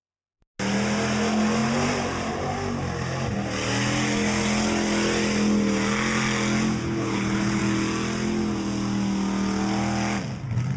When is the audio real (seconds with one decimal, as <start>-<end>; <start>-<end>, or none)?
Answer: 0.0-6.8; 7.6-10.8